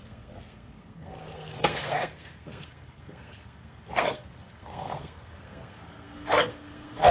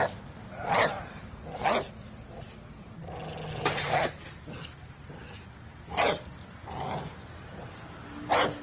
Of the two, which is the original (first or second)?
second